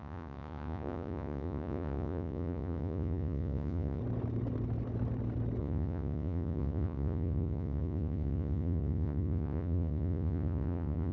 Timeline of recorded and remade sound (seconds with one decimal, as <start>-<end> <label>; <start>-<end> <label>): 0.0-4.0 remade; 4.0-5.6 recorded; 5.6-11.1 remade